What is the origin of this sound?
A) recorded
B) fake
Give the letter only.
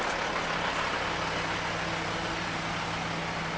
A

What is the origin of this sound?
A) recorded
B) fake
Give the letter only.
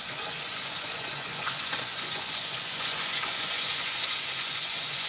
B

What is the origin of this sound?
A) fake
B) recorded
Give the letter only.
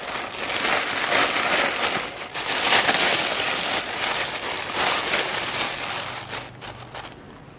B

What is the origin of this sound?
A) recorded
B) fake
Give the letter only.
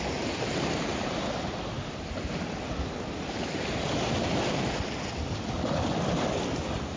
A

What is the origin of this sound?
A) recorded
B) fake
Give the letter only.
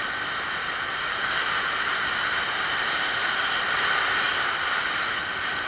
A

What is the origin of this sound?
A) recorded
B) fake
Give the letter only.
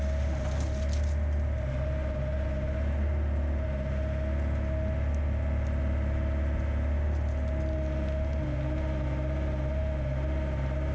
A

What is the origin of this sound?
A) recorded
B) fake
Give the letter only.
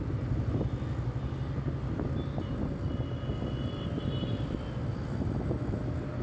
A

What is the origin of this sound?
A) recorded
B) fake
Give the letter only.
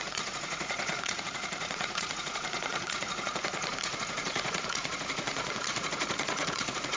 B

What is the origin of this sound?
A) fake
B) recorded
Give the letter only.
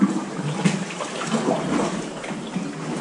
B